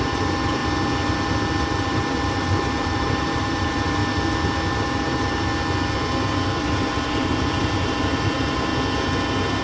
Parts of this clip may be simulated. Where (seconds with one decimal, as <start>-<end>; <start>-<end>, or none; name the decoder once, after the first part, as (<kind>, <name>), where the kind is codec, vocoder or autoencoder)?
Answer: 0.0-0.6 (vocoder, BigVGAN v2); 1.6-4.0; 4.7-5.5; 6.6-8.7